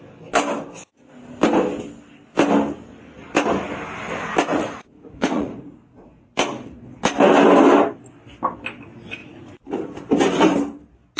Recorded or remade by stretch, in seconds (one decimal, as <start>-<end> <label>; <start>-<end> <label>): 0.0-4.5 recorded; 4.5-6.3 remade; 6.3-9.2 recorded; 9.2-9.8 remade; 9.8-11.2 recorded